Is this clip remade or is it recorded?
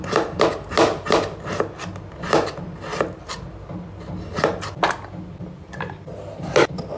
recorded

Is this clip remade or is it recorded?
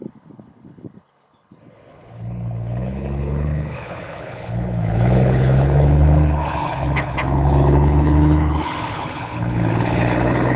remade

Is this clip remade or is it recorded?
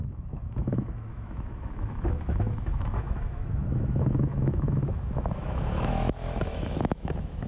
remade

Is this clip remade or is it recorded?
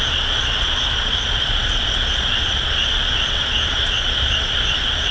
remade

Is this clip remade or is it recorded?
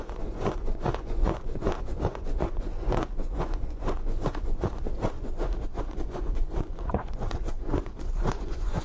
remade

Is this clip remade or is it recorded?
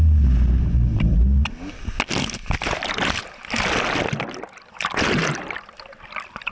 recorded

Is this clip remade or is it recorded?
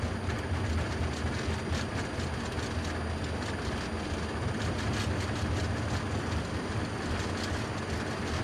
recorded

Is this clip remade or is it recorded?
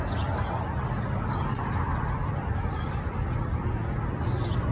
recorded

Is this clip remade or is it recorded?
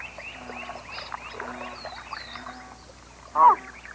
recorded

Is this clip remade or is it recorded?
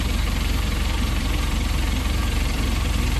remade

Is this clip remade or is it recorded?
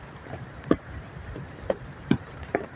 remade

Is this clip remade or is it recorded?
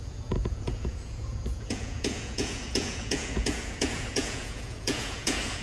remade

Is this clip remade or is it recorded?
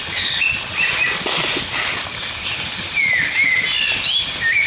recorded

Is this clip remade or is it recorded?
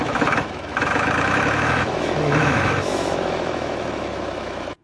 remade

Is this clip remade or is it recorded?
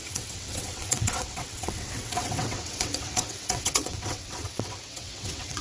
remade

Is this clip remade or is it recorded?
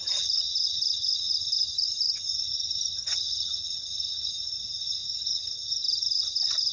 remade